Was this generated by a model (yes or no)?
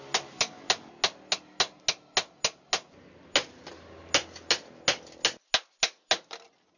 no